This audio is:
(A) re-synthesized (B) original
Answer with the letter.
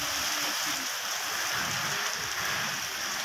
B